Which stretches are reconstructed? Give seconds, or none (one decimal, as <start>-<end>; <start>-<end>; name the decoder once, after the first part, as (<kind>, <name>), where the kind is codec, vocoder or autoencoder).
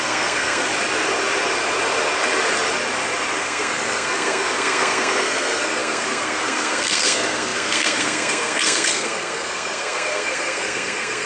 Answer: 0.0-0.7 (codec, SNAC); 3.4-11.3